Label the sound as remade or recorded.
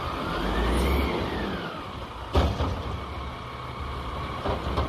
recorded